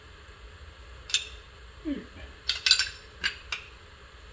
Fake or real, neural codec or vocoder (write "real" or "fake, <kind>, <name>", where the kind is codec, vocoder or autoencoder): real